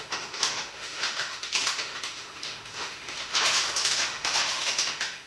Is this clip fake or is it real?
fake